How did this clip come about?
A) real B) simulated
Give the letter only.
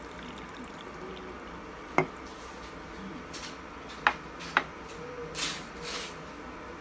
A